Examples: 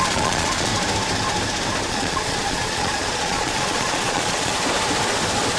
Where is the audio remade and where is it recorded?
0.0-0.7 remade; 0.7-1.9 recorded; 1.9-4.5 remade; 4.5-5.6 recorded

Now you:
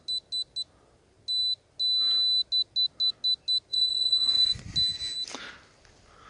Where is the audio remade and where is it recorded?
0.0-3.7 recorded; 3.7-4.6 remade; 4.6-6.3 recorded

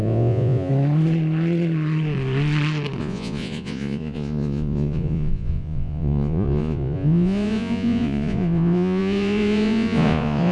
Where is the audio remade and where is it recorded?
0.0-0.7 remade; 0.7-3.0 recorded; 3.0-10.5 remade

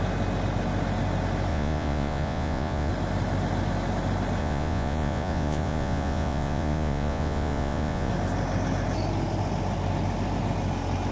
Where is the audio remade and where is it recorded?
0.0-1.5 recorded; 1.5-2.9 remade; 2.9-4.4 recorded; 4.4-8.1 remade; 8.1-11.1 recorded

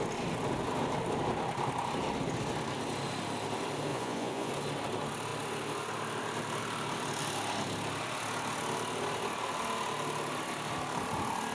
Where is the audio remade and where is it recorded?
0.0-3.9 recorded; 3.9-4.5 remade; 4.5-11.5 recorded

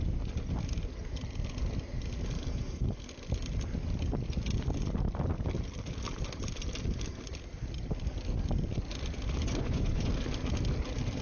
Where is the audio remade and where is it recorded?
0.0-9.4 recorded; 9.4-10.1 remade; 10.1-11.2 recorded

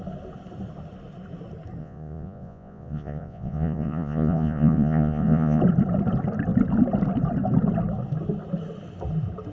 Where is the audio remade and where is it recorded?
0.0-1.8 recorded; 1.8-5.6 remade; 5.6-9.5 recorded